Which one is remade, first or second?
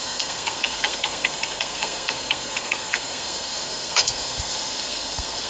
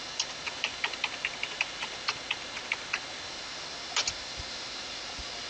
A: first